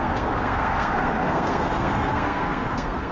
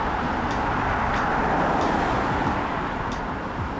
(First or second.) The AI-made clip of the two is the first